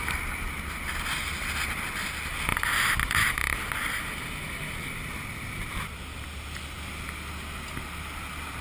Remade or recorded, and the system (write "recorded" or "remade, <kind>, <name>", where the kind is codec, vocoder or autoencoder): recorded